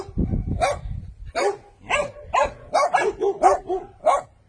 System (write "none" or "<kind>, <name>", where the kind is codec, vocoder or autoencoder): none